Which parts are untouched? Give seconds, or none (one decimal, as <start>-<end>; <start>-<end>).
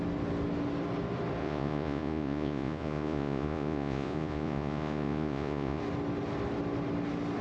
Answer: 0.0-1.4; 5.8-7.4